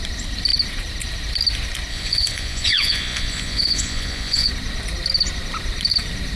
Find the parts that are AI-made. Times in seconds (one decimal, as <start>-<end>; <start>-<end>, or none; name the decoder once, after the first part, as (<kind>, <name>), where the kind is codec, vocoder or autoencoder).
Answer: 1.9-4.5 (vocoder, Vocos)